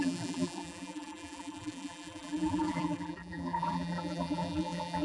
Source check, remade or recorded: remade